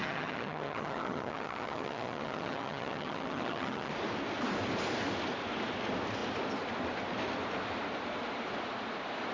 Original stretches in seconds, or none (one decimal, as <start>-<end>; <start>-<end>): 3.9-9.3